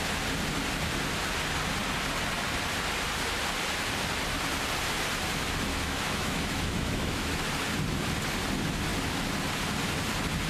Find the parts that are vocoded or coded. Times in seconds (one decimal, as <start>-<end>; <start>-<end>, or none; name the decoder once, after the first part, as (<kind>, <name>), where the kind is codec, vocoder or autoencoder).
5.7-7.4 (autoencoder, DAC-VAE)